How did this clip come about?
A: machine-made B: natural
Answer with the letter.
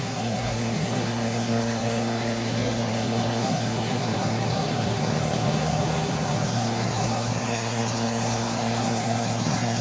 A